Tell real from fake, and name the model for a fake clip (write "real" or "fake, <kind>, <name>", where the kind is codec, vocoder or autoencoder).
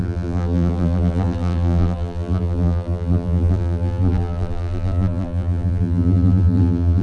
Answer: fake, vocoder, BigVGAN v2